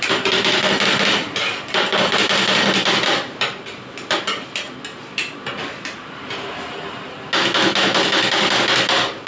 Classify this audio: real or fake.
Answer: real